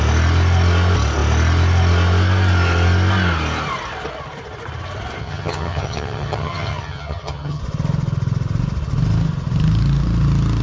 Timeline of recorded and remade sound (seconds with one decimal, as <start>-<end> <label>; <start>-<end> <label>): 0.0-5.2 recorded; 5.2-7.6 remade; 7.6-10.6 recorded